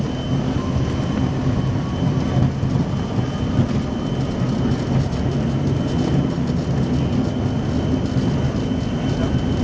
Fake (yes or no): no